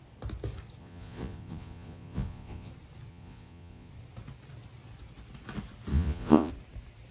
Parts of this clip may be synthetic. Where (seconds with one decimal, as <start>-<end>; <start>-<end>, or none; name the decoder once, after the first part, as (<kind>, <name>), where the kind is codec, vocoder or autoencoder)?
0.8-2.7 (vocoder, Vocos); 3.1-3.9; 5.9-6.5